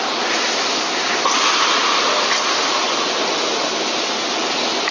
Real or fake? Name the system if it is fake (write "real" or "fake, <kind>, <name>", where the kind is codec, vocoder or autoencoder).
real